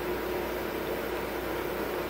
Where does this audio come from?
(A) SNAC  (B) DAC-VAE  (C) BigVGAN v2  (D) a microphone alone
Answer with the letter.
C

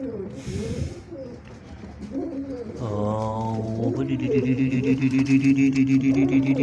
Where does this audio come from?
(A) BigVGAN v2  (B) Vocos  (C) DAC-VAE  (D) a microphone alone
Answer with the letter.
A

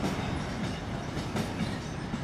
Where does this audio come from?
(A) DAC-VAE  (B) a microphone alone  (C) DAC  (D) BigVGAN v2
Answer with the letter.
D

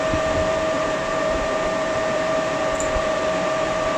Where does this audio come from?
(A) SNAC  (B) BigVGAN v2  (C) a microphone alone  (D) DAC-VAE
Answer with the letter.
B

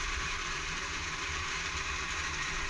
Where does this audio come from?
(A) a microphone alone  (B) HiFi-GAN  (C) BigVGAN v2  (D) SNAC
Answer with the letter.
C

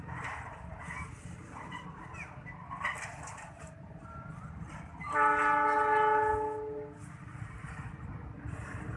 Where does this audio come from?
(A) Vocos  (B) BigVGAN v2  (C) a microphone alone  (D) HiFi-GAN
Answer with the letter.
C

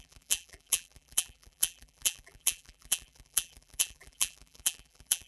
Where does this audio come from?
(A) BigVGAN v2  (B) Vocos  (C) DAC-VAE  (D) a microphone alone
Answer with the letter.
A